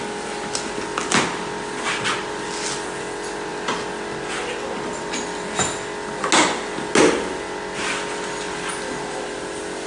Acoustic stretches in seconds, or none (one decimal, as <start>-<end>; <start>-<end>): 0.0-9.9